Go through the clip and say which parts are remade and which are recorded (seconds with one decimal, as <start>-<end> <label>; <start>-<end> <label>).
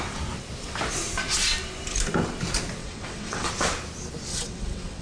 0.0-2.8 recorded; 2.8-3.5 remade; 3.5-4.3 recorded; 4.3-5.0 remade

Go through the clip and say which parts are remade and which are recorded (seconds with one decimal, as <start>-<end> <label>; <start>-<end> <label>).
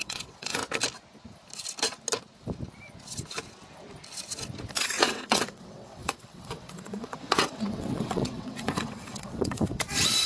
0.0-0.6 remade; 0.6-4.7 recorded; 4.7-10.3 remade